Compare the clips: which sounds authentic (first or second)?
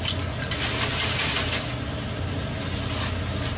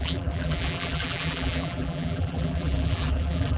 first